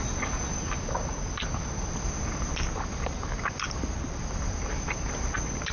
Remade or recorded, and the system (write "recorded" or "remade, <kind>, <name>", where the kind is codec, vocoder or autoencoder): recorded